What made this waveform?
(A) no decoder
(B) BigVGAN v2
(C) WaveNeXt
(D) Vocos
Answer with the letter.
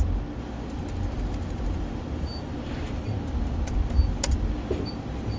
A